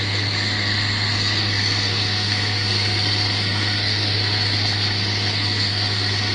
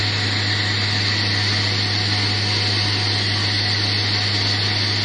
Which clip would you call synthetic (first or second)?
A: first